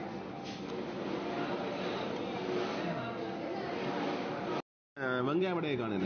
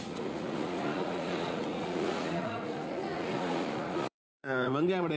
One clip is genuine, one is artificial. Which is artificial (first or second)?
second